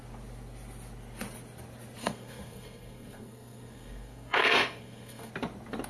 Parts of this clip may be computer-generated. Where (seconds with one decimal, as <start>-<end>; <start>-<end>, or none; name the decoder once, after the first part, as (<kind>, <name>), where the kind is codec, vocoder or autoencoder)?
2.0-5.3 (codec, SNAC)